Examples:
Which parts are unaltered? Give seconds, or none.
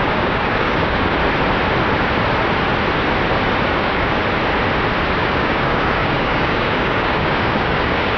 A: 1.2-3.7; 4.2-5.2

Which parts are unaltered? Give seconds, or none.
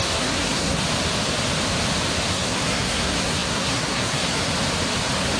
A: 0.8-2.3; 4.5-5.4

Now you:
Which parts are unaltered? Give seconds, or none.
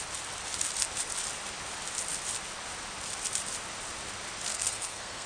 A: 0.0-4.5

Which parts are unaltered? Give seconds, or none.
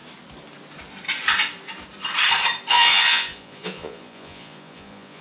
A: 0.0-2.7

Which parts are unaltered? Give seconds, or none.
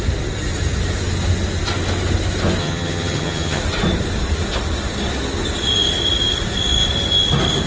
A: 0.0-2.6; 3.6-7.7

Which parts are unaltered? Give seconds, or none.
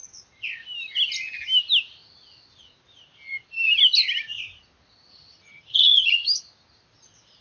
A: 0.0-5.1; 6.4-7.4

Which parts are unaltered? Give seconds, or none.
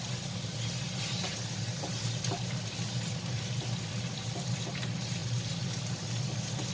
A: 0.0-6.7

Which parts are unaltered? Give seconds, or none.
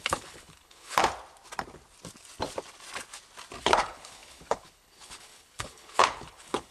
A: 1.0-3.6